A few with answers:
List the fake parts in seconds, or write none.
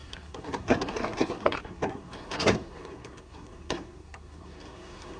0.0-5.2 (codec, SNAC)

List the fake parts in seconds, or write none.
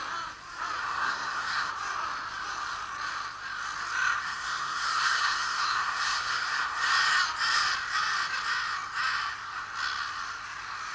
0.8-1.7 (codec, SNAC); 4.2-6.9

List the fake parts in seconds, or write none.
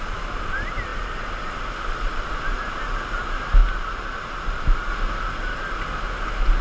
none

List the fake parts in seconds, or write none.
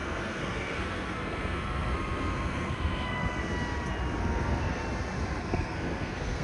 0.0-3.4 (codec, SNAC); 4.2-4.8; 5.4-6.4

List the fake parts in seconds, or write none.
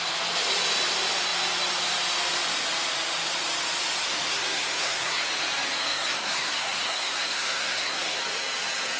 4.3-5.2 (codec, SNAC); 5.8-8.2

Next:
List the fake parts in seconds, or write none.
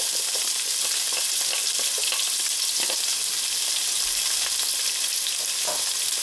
none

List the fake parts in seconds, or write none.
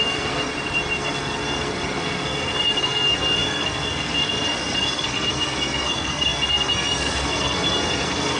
0.0-0.5 (codec, SNAC); 1.0-8.4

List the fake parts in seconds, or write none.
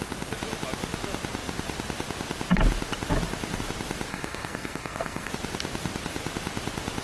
4.1-5.3 (codec, SNAC)